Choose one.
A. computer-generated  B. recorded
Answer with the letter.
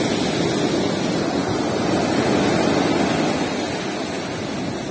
B